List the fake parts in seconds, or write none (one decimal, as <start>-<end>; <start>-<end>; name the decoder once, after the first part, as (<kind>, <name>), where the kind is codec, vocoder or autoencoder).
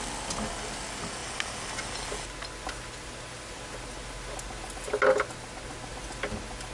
none